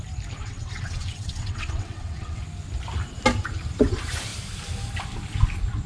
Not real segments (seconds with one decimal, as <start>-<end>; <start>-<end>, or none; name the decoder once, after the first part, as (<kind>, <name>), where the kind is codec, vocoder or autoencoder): 0.4-2.4 (vocoder, WaveNeXt)

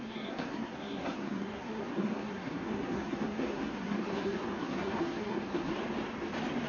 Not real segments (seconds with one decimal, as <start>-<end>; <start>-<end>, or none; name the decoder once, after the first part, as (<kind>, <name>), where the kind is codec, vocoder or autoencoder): 0.0-5.7 (codec, SNAC)

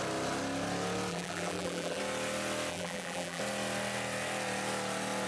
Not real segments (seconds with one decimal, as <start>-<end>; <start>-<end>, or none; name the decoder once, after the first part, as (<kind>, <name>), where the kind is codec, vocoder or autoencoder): 1.1-2.0 (vocoder, BigVGAN v2); 2.7-3.4

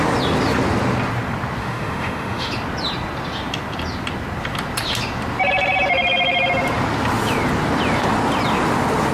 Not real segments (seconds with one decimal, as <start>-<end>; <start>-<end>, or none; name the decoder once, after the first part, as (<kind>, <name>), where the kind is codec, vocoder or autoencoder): 1.6-2.5 (autoencoder, DAC-VAE)